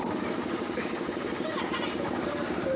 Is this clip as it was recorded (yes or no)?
no